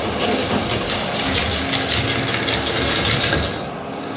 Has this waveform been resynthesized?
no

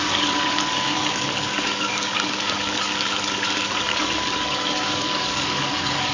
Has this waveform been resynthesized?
yes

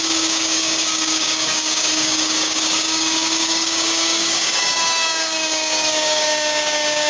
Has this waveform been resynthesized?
yes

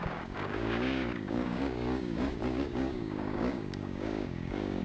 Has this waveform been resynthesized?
yes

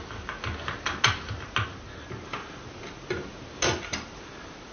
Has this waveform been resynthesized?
no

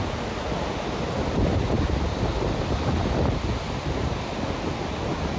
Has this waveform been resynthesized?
no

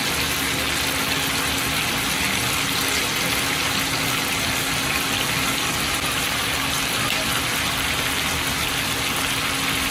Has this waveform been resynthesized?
no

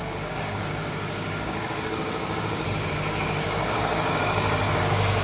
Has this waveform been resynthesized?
yes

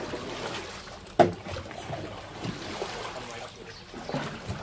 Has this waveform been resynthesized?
no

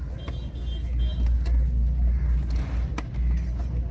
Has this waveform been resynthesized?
no